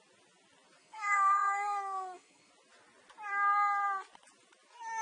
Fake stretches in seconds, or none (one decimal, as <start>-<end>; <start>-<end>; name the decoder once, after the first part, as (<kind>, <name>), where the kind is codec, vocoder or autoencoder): 0.8-2.5 (codec, SNAC)